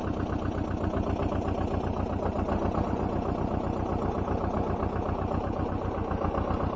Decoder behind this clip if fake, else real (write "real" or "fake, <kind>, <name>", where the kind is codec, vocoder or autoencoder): real